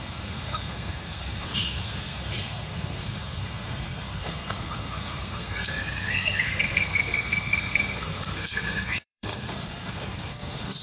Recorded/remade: remade